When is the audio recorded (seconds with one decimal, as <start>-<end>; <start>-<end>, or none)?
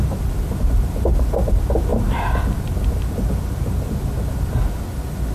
0.0-5.3